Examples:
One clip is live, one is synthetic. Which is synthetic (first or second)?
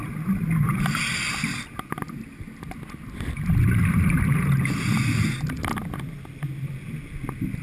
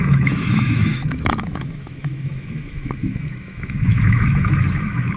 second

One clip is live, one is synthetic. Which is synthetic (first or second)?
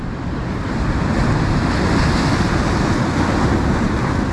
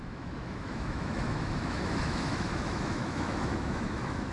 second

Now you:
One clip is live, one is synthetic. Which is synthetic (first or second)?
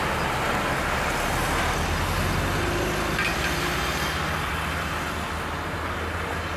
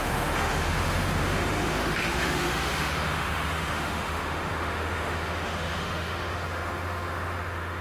second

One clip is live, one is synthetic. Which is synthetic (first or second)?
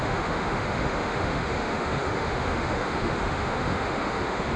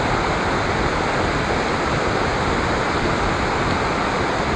first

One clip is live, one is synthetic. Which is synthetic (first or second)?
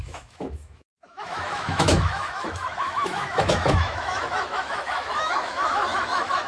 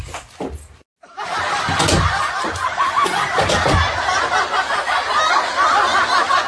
first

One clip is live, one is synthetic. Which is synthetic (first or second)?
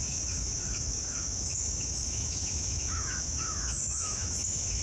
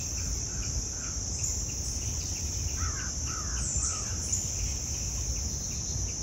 first